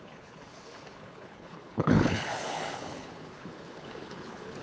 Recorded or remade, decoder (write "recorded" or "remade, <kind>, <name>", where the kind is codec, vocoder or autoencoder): remade, codec, HILCodec